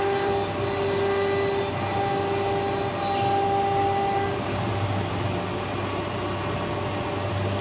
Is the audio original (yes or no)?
yes